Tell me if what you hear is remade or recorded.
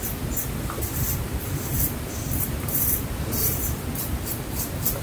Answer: recorded